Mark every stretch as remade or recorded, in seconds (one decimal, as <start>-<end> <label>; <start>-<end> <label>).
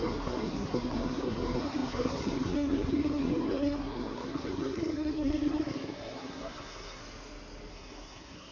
0.0-7.0 remade; 7.0-7.7 recorded; 7.7-8.5 remade